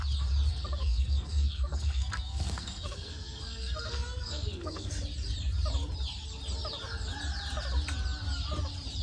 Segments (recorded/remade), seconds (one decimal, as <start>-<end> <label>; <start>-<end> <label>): 0.0-0.5 recorded; 0.5-4.9 remade; 4.9-9.0 recorded